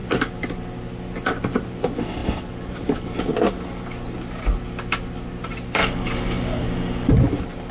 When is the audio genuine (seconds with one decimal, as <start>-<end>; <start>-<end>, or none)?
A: 0.0-5.8; 7.1-7.7